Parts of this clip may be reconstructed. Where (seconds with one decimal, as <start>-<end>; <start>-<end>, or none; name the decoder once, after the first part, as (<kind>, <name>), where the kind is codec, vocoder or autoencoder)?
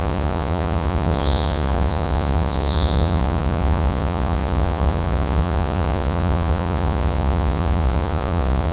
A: 0.0-8.7 (vocoder, Vocos)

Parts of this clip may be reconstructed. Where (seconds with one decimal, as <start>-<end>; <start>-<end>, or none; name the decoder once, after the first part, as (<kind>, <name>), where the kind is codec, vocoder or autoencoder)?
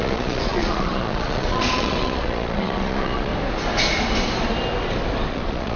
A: 0.0-3.3 (vocoder, Vocos); 5.3-5.8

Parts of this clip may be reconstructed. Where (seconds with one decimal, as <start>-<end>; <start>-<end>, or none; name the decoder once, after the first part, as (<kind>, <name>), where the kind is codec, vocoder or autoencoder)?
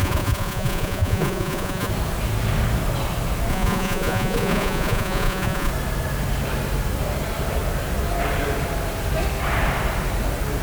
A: 0.0-1.9 (vocoder, Vocos); 3.5-5.7